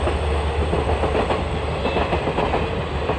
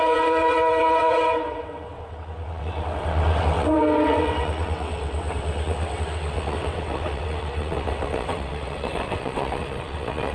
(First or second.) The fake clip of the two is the second